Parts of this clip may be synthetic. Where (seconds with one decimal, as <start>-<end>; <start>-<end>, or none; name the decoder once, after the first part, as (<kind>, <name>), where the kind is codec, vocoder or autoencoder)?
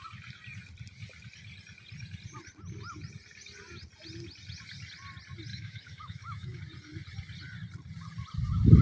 5.5-6.6 (autoencoder, DAC-VAE)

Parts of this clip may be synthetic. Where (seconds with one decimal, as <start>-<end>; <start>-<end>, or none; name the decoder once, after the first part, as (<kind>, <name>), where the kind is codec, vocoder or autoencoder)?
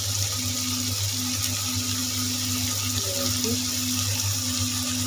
none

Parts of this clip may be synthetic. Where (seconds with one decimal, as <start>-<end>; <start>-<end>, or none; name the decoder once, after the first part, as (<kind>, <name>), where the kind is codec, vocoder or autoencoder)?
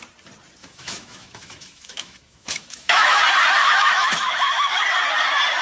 0.6-3.2 (autoencoder, DAC-VAE); 3.6-4.8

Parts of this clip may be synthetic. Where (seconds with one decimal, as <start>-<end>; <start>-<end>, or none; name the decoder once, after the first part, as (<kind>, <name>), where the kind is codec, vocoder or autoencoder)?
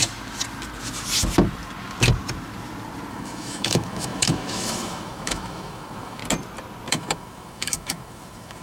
3.1-6.2 (autoencoder, DAC-VAE); 6.9-8.6